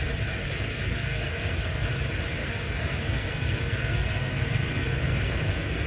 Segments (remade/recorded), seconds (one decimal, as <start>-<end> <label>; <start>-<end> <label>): 0.0-0.4 recorded; 0.4-1.9 remade; 1.9-2.4 recorded; 2.4-5.9 remade